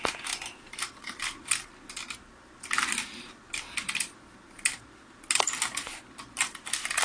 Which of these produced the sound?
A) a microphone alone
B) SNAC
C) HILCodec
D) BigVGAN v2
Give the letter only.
A